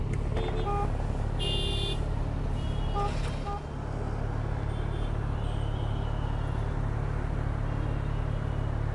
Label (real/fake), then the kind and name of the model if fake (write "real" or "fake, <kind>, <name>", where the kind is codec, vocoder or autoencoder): real